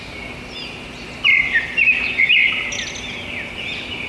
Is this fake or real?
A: real